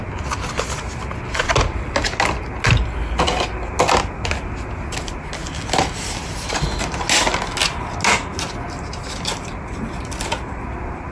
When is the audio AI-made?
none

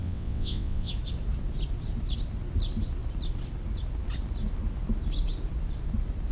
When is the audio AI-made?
0.0-0.9

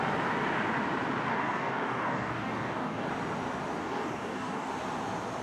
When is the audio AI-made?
1.3-3.1; 3.8-4.7

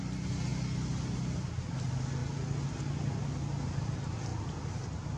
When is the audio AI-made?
4.3-5.2